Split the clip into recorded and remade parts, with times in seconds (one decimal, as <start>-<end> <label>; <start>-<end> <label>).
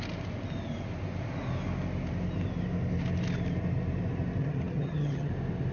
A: 0.0-4.4 recorded; 4.4-5.3 remade; 5.3-5.7 recorded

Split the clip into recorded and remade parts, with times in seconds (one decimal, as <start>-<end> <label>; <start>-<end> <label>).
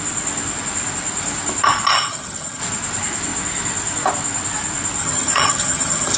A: 0.0-1.9 recorded; 1.9-2.6 remade; 2.6-5.0 recorded; 5.0-6.2 remade